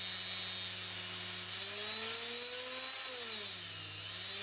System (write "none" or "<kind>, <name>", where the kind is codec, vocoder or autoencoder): none